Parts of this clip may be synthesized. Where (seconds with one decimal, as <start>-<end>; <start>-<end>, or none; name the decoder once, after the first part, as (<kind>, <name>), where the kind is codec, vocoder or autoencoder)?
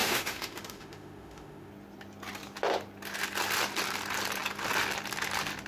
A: 0.0-1.7 (autoencoder, DAC-VAE)